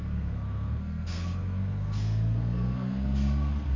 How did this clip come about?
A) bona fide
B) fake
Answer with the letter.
B